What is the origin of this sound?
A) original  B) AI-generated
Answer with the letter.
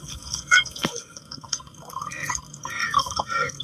B